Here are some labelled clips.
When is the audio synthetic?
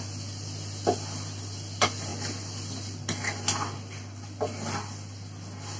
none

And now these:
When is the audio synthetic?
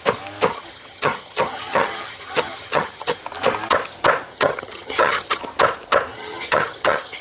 0.5-3.2 (vocoder, HiFi-GAN); 4.3-5.4; 6.1-7.2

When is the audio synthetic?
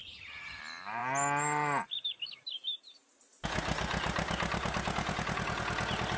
0.0-0.6 (vocoder, HiFi-GAN)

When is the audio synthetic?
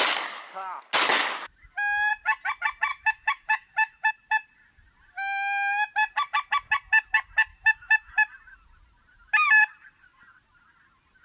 2.9-4.1 (autoencoder, DAC-VAE); 7.5-8.1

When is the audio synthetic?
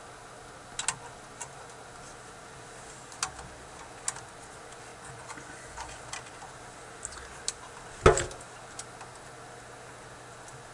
4.9-6.0 (vocoder, Vocos)